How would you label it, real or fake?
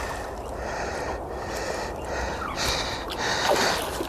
real